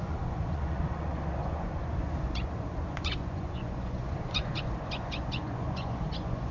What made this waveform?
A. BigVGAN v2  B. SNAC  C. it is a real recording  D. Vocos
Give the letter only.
D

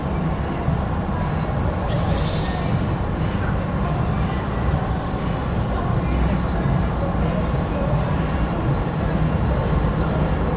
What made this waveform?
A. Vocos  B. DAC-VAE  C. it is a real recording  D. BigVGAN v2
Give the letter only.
C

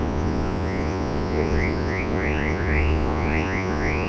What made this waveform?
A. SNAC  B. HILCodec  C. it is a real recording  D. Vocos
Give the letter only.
D